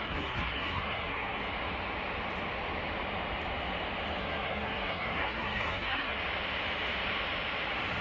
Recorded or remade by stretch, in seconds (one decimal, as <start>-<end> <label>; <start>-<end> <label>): 0.0-1.4 remade; 1.4-4.2 recorded; 4.2-6.2 remade; 6.2-8.0 recorded